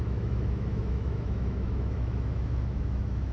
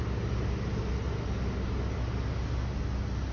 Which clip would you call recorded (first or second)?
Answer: second